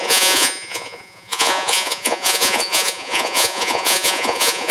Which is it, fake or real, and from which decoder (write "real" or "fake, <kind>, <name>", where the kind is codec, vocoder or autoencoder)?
fake, vocoder, Vocos